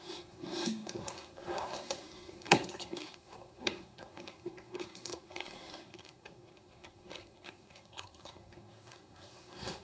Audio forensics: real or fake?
fake